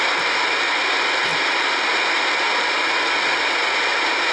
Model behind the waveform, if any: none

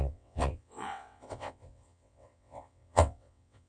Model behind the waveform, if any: vocoder, WaveNeXt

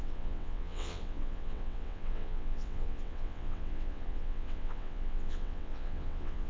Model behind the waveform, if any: vocoder, WaveNeXt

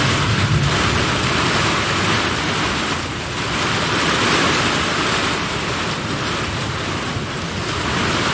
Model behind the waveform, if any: none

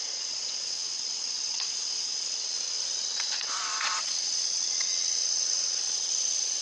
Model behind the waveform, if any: vocoder, WaveNeXt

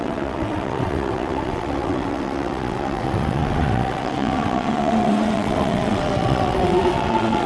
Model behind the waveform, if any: vocoder, WaveNeXt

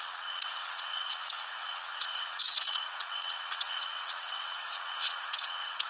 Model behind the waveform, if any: vocoder, WaveNeXt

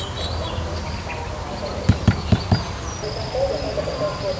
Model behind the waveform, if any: none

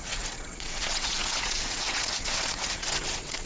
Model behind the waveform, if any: vocoder, WaveNeXt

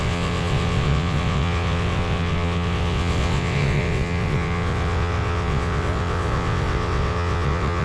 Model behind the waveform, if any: vocoder, WaveNeXt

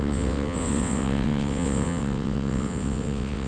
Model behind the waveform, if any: vocoder, WaveNeXt